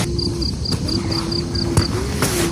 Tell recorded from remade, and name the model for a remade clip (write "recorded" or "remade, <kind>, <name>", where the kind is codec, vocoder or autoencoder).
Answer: recorded